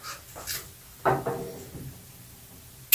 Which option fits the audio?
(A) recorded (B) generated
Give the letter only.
A